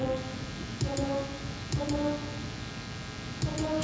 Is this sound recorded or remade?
recorded